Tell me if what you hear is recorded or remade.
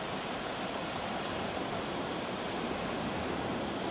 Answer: recorded